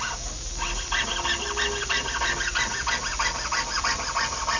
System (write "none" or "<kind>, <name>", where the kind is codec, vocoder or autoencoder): none